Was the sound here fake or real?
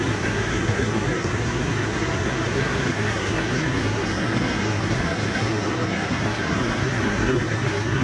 fake